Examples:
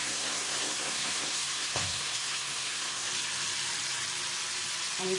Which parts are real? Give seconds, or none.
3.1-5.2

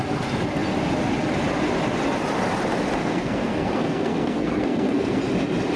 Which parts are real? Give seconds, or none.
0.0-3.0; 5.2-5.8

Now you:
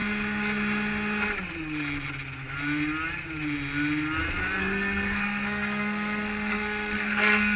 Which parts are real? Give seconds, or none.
0.0-4.6